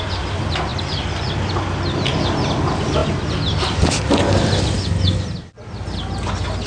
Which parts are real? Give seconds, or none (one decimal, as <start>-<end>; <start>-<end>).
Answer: 0.0-6.7